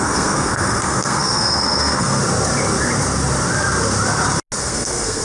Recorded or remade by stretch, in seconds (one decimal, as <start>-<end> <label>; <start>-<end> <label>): 0.0-2.2 remade; 2.2-4.6 recorded; 4.6-5.2 remade